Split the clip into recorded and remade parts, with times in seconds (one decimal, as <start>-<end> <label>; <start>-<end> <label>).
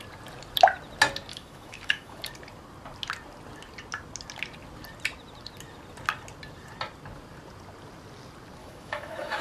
0.0-1.3 recorded; 1.3-2.2 remade; 2.2-8.6 recorded; 8.6-9.4 remade